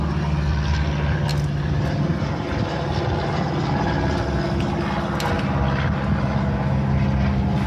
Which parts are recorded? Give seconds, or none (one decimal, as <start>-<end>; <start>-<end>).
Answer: 0.0-7.7